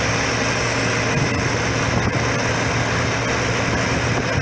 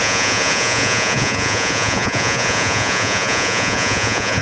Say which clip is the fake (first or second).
second